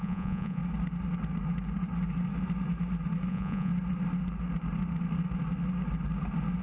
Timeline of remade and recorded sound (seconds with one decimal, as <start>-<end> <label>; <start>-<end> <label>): 0.0-0.6 remade; 0.6-3.3 recorded; 3.3-3.7 remade; 3.7-6.6 recorded